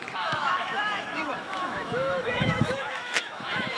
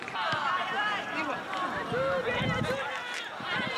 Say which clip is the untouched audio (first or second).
second